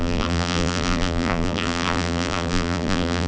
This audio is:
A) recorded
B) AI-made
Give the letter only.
B